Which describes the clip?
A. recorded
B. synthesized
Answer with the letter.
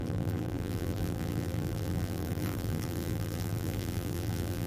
B